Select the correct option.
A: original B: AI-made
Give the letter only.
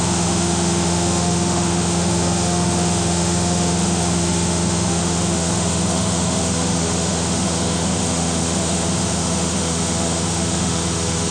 B